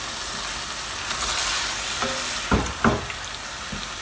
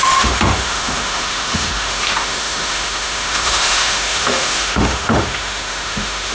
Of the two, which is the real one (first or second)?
first